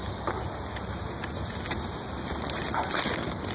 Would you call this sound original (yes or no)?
yes